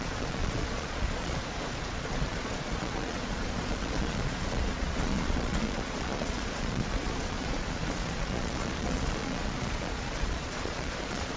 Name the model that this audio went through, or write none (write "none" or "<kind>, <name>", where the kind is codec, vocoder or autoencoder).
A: vocoder, Vocos